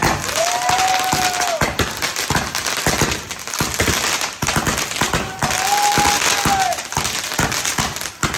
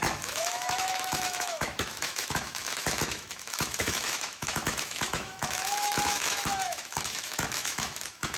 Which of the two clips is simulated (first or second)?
second